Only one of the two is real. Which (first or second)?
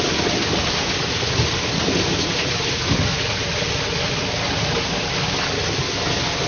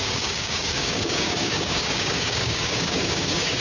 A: first